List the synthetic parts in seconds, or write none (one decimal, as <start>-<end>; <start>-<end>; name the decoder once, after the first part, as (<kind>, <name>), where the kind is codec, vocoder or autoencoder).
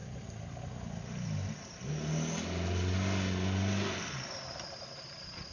none